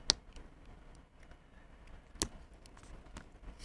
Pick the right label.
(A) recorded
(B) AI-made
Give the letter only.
A